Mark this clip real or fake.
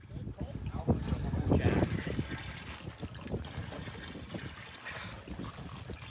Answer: real